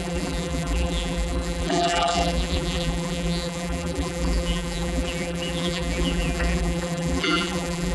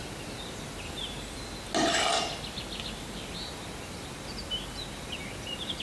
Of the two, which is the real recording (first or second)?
second